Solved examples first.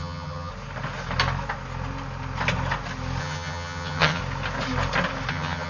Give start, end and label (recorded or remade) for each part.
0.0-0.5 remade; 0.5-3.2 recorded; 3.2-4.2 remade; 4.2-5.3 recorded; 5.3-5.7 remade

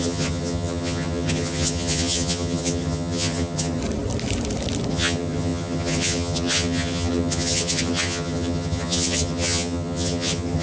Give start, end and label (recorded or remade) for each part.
0.0-3.8 remade; 3.8-4.9 recorded; 4.9-10.6 remade

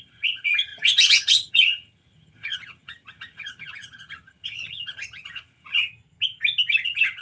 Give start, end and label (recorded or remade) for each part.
0.0-5.9 remade; 5.9-6.8 recorded; 6.8-7.2 remade

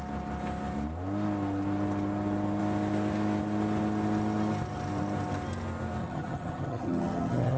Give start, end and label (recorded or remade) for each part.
0.0-6.0 recorded; 6.0-7.6 remade

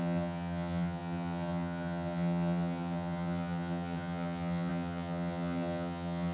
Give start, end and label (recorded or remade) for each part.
0.0-6.3 remade

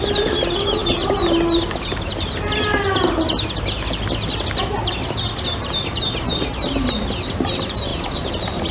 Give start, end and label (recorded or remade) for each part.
0.0-8.7 recorded